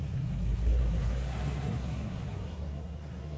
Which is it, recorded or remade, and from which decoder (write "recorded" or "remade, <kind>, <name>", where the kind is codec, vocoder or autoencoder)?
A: remade, codec, SNAC